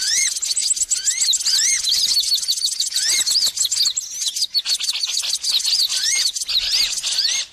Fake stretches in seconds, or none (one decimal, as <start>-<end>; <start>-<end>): 5.9-6.5